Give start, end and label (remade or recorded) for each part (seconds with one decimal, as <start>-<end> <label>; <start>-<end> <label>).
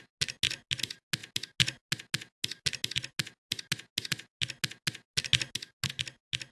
0.0-6.5 recorded